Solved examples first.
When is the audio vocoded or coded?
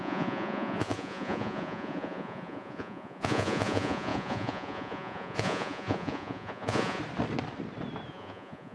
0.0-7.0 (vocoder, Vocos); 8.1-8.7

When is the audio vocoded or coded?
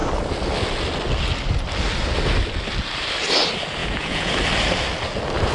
3.8-4.3 (vocoder, Vocos)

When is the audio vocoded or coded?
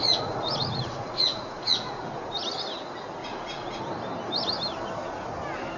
0.0-2.4 (vocoder, Vocos); 3.2-3.8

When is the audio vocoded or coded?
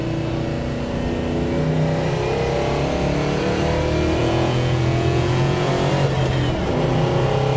4.2-5.7 (vocoder, Vocos)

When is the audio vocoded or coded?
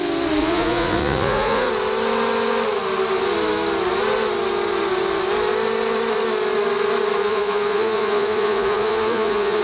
0.4-1.7 (vocoder, Vocos); 7.2-9.6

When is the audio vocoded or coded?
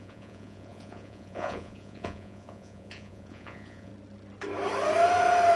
0.0-3.9 (vocoder, Vocos)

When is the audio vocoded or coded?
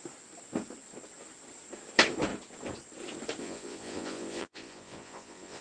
3.4-5.6 (vocoder, Vocos)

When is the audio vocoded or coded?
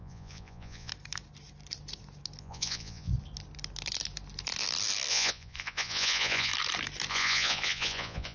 0.0-0.9 (vocoder, Vocos); 2.4-3.1; 5.1-6.5; 7.1-8.3